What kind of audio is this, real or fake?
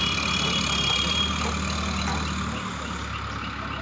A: real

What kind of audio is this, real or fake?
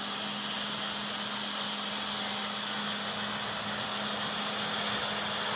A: real